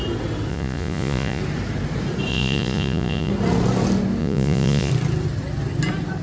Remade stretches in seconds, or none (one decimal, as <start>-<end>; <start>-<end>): 0.5-1.4; 2.3-3.3; 4.2-4.9